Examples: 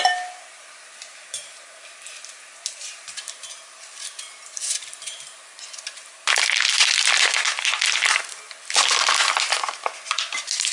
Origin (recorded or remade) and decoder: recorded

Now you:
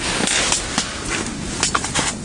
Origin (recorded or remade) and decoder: recorded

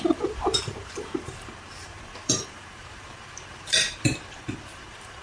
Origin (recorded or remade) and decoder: remade, vocoder, BigVGAN v2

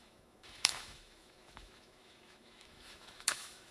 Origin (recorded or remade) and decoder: remade, autoencoder, DAC-VAE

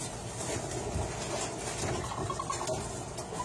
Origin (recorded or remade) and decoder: recorded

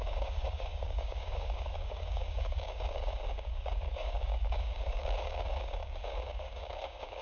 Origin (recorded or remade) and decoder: remade, codec, DAC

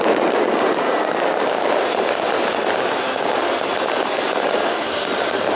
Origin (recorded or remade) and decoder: recorded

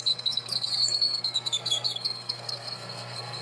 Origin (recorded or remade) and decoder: remade, codec, SNAC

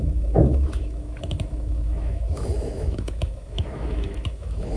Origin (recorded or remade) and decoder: remade, autoencoder, DAC-VAE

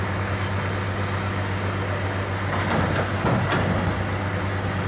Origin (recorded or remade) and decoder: recorded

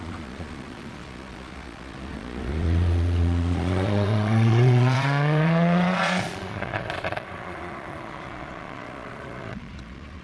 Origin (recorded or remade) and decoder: remade, vocoder, Vocos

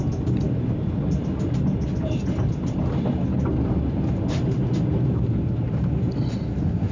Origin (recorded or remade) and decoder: recorded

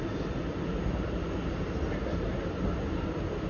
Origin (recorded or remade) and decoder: recorded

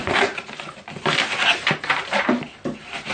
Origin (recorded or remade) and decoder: recorded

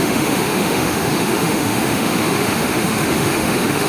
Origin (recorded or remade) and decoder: remade, autoencoder, DAC-VAE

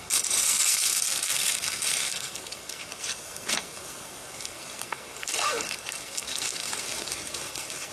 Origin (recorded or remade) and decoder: remade, codec, SNAC